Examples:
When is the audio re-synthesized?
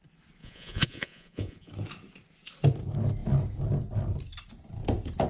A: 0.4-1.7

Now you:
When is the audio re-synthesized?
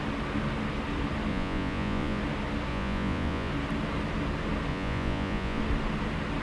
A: 1.3-2.2; 2.7-3.5; 4.7-5.6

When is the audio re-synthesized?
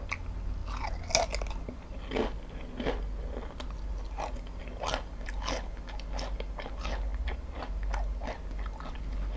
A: none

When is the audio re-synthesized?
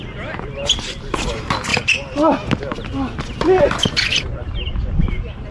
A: none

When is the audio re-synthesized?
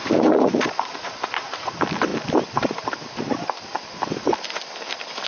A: 0.0-1.7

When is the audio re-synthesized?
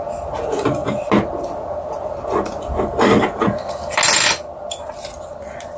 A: none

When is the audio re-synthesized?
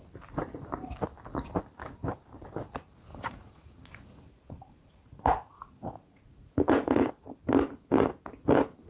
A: 3.1-7.1